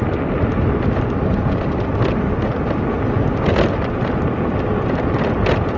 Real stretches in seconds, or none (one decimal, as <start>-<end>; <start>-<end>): 0.0-5.8